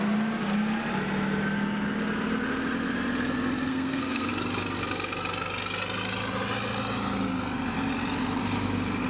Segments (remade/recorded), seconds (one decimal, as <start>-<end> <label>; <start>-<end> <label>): 0.0-3.7 recorded; 3.7-4.3 remade; 4.3-9.1 recorded